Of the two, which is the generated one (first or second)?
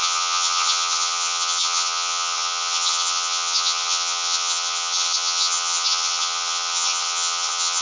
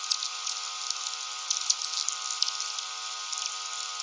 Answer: first